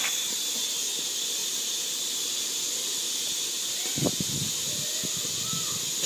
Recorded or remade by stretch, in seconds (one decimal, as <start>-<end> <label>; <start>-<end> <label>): 0.0-6.1 recorded